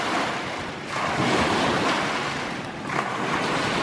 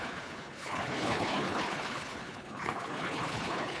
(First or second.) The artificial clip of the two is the second